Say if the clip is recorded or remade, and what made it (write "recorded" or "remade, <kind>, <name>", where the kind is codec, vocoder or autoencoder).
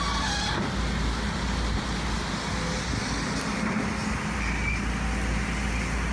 recorded